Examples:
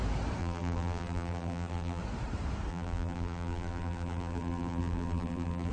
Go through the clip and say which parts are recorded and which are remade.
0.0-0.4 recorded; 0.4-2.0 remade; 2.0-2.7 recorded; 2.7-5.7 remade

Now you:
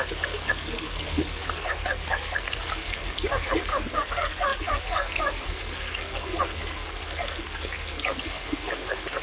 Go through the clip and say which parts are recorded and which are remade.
0.0-9.2 remade